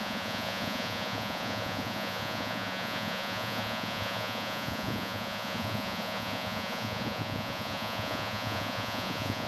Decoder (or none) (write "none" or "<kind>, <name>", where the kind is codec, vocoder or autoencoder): vocoder, Vocos